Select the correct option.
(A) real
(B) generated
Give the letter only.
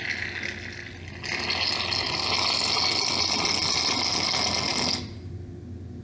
A